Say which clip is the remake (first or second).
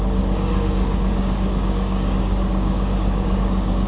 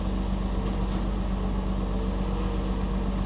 first